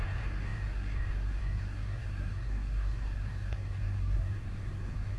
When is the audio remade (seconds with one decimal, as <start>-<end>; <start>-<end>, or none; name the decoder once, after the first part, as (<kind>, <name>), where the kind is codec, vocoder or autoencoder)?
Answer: 0.0-5.2 (codec, SNAC)